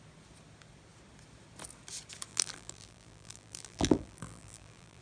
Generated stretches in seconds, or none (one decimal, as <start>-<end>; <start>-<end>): 2.3-5.0